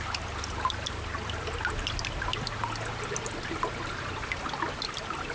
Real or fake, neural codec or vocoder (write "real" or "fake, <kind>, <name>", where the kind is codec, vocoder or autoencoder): real